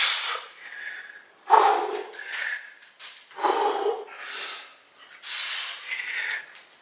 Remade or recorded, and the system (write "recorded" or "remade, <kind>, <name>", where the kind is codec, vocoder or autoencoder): recorded